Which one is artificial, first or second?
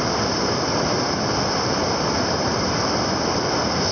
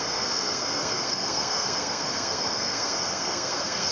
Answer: second